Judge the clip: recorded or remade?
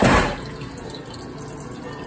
recorded